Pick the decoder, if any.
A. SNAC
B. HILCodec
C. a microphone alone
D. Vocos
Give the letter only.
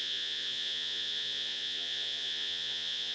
D